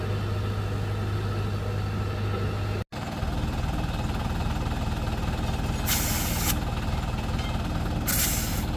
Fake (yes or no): no